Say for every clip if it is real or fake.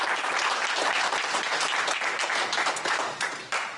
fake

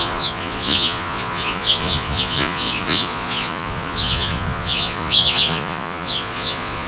fake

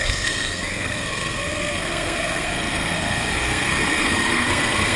fake